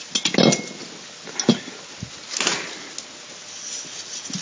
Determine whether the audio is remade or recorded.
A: recorded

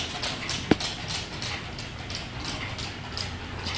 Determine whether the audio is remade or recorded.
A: recorded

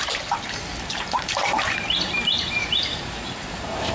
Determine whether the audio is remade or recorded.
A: remade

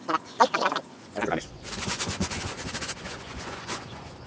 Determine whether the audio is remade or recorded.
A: remade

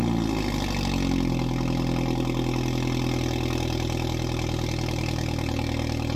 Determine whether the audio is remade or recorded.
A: recorded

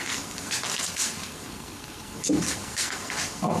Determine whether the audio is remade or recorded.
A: remade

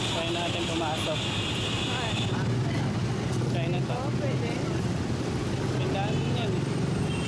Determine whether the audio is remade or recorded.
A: recorded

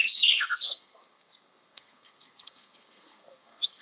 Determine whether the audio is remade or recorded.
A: remade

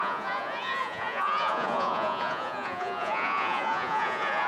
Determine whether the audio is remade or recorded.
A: remade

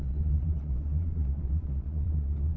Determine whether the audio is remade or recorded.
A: remade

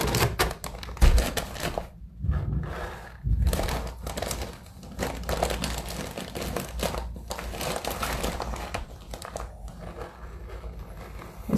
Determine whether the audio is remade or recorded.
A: recorded